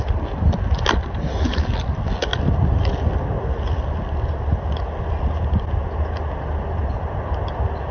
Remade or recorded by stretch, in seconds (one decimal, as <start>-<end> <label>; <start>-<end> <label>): 0.0-7.9 recorded